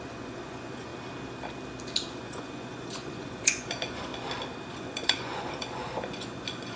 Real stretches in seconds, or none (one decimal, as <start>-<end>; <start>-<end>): 0.9-2.1; 4.1-4.7